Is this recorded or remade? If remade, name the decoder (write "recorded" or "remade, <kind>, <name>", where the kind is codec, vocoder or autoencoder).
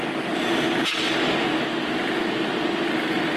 recorded